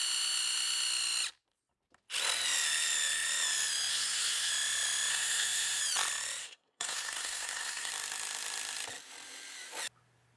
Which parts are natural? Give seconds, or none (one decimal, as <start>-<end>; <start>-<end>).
0.0-3.9; 4.5-5.1; 5.8-6.4; 7.9-10.4